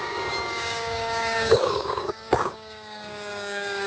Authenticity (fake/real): fake